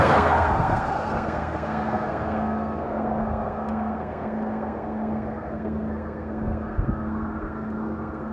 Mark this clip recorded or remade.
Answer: remade